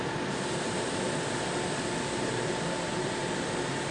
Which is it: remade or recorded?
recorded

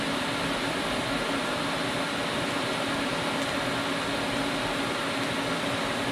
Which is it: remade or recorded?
recorded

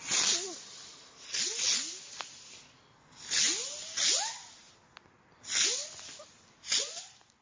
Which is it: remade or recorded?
recorded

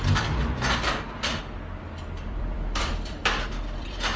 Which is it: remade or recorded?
remade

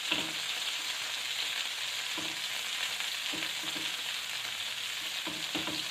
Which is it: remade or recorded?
recorded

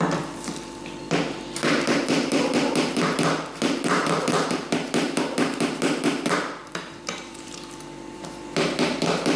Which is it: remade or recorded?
remade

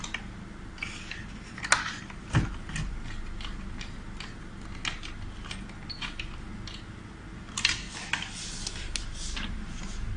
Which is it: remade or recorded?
recorded